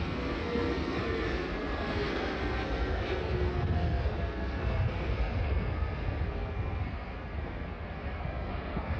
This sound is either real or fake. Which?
fake